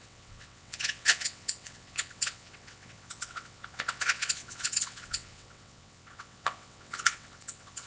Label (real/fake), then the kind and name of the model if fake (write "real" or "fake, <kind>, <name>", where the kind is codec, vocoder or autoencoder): fake, vocoder, WaveNeXt